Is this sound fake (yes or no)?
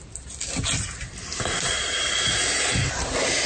no